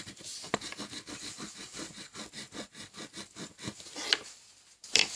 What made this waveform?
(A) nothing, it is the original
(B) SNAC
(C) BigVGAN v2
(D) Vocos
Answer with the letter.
A